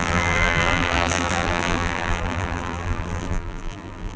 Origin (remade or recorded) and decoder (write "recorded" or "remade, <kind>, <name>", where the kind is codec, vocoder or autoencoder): remade, vocoder, BigVGAN v2